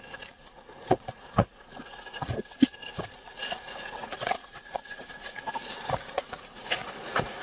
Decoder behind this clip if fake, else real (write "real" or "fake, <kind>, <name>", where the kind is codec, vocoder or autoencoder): fake, vocoder, Vocos